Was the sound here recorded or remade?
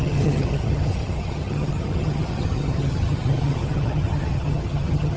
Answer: remade